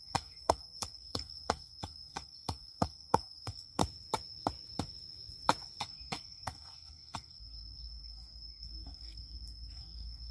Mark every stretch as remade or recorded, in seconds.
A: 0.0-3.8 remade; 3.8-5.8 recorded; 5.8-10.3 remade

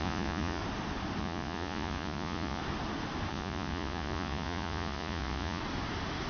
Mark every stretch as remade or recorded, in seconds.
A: 0.0-0.6 remade; 0.6-1.2 recorded; 1.2-2.6 remade; 2.6-3.3 recorded; 3.3-5.6 remade; 5.6-6.3 recorded

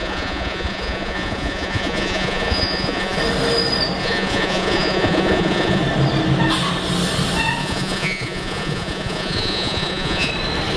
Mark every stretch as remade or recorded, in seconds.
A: 0.0-3.2 remade; 3.2-4.0 recorded; 4.0-5.8 remade; 5.8-7.6 recorded; 7.6-10.3 remade; 10.3-10.8 recorded

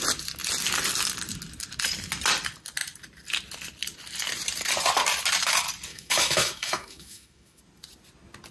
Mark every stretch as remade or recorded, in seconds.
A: 0.0-5.9 recorded; 5.9-7.6 remade; 7.6-8.5 recorded

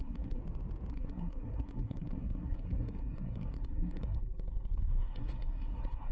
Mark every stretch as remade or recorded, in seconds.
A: 0.0-0.4 remade; 0.4-0.9 recorded; 0.9-6.1 remade

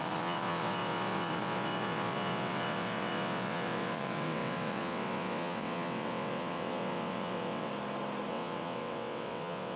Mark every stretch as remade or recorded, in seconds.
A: 0.0-7.7 remade; 7.7-8.3 recorded; 8.3-9.8 remade